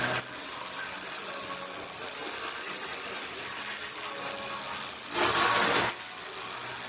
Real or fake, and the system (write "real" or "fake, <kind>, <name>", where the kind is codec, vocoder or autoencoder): real